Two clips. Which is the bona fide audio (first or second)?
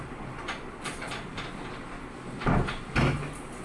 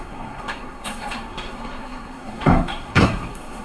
first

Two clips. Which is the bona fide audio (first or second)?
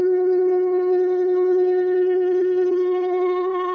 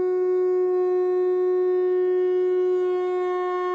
second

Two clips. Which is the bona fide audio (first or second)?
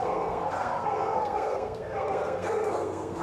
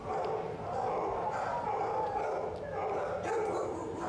second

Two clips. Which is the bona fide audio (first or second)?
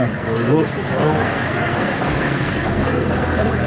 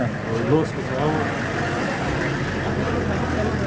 second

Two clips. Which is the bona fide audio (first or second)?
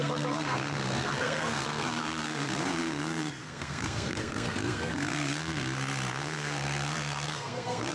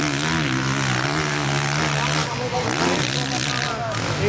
second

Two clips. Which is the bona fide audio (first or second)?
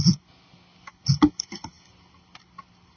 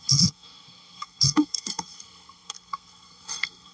first